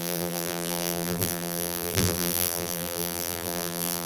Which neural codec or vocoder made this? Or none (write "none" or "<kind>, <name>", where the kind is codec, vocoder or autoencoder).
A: vocoder, BigVGAN v2